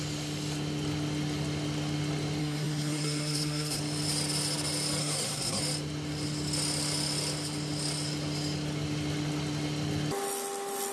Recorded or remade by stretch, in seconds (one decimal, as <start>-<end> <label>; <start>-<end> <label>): 0.0-2.4 recorded; 2.4-3.8 remade; 3.8-5.0 recorded; 5.0-5.6 remade; 5.6-10.9 recorded